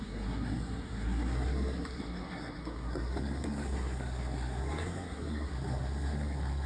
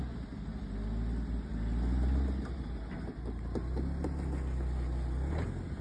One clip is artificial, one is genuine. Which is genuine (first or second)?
second